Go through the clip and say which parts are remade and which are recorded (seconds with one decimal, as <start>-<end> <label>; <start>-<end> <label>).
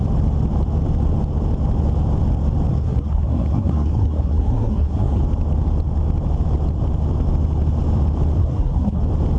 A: 0.0-2.7 recorded; 2.7-5.2 remade; 5.2-8.4 recorded; 8.4-9.0 remade; 9.0-9.4 recorded